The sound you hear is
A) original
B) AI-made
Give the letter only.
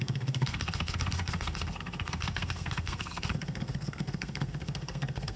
B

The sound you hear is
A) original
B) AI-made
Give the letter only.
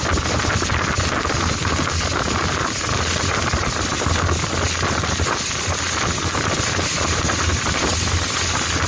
A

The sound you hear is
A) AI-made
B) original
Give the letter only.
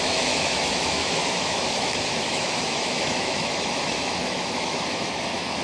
A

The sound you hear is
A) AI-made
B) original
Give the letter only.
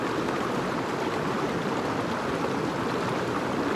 B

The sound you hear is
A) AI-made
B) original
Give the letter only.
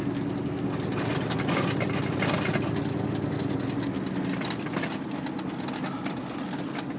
B